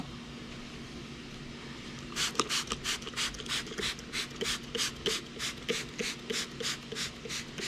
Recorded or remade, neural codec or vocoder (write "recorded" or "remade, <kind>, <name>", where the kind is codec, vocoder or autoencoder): recorded